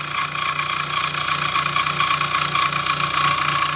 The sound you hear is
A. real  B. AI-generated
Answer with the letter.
A